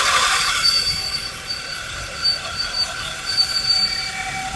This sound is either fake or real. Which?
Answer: fake